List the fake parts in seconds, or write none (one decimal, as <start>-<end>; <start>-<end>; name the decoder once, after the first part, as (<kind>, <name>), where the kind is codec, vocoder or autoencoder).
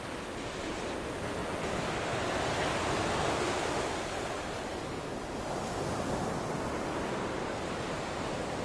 none